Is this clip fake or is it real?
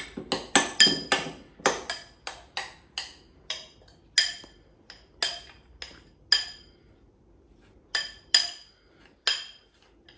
real